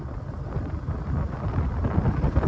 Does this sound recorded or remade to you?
recorded